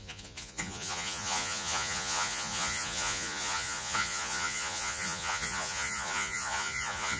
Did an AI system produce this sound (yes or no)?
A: yes